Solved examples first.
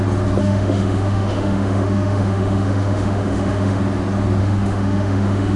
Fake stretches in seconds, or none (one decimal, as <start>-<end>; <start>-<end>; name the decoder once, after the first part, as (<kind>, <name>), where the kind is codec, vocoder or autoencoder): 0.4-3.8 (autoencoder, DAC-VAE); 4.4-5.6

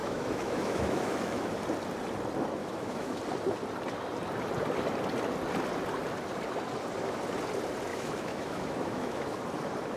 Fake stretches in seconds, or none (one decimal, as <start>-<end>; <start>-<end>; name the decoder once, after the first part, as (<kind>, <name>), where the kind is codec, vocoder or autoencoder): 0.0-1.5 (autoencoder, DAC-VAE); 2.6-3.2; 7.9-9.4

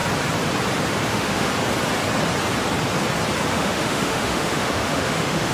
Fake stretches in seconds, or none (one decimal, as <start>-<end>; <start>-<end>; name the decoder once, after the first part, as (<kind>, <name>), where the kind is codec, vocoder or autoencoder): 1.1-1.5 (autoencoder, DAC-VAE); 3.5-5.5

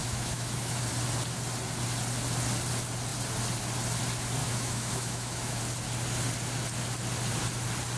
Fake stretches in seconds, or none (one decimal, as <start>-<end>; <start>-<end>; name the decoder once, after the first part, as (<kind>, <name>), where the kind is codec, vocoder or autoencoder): 0.0-0.8 (autoencoder, DAC-VAE); 4.4-5.6